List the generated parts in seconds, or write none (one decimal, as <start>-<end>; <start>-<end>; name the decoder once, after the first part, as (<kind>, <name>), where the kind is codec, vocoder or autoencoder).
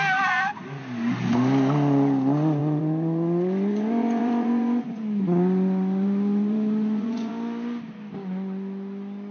2.6-7.3 (vocoder, Vocos)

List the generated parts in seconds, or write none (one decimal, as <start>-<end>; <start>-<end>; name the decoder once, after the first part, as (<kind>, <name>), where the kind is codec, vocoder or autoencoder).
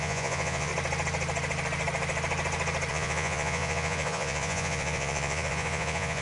0.0-0.7 (vocoder, Vocos); 2.9-6.2